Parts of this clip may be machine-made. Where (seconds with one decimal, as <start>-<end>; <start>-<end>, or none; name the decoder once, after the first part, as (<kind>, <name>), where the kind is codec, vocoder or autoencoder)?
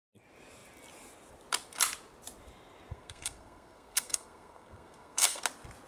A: 2.9-5.4 (codec, SNAC)